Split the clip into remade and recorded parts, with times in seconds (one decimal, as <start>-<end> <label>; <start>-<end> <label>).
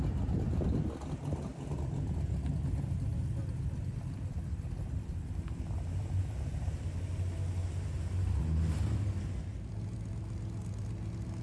0.0-1.5 recorded; 1.5-2.5 remade; 2.5-3.4 recorded; 3.4-6.8 remade; 6.8-7.6 recorded; 7.6-8.4 remade; 8.4-11.4 recorded